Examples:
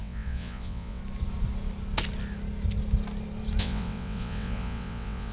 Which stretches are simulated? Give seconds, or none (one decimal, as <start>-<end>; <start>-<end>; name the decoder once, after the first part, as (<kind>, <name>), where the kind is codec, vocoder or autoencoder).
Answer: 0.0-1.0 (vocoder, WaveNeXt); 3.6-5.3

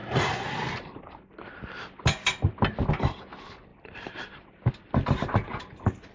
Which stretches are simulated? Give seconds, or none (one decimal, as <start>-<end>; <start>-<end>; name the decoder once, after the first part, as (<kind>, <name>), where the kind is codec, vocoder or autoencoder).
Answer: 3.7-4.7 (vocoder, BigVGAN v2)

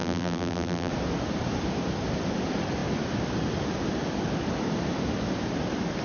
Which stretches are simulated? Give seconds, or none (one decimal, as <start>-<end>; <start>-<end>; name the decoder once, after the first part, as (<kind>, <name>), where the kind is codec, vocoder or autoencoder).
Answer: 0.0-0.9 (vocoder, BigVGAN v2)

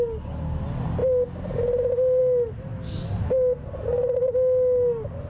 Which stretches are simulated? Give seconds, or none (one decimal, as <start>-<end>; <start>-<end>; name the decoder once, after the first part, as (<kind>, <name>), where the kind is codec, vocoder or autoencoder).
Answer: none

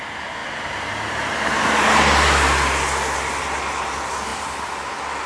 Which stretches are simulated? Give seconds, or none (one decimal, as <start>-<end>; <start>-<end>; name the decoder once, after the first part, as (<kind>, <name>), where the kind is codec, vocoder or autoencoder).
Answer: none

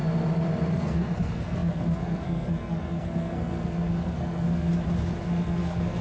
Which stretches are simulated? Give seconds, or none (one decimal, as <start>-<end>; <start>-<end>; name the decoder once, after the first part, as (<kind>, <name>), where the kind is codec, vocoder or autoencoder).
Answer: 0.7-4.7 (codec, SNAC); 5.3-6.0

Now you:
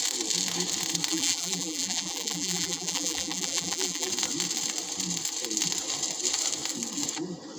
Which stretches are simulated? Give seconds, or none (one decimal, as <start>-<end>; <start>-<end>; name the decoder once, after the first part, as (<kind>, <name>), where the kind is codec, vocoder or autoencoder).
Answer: 1.1-4.1 (vocoder, BigVGAN v2)